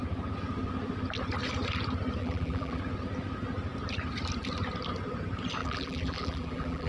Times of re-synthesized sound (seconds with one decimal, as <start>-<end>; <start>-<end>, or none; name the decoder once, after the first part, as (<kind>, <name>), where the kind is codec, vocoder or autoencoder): 2.2-2.8 (vocoder, BigVGAN v2); 5.6-6.9